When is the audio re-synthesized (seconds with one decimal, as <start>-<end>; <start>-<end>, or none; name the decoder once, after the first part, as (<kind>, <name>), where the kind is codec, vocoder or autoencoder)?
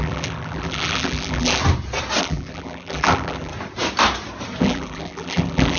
0.0-1.6 (vocoder, BigVGAN v2); 2.2-3.5; 4.6-5.8